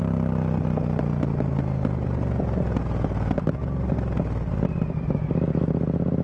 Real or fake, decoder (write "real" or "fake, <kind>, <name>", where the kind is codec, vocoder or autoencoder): real